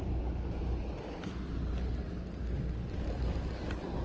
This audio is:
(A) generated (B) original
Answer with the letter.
B